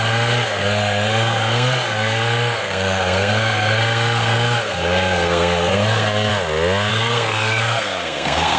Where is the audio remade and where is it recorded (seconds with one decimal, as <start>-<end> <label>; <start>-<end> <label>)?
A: 0.0-6.3 remade; 6.3-6.9 recorded; 6.9-8.6 remade